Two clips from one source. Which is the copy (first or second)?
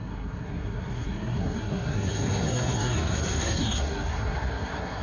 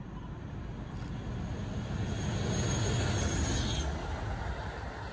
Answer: first